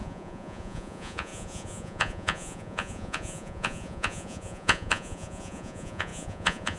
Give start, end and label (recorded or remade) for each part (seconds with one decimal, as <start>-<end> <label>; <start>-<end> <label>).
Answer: 0.0-6.8 remade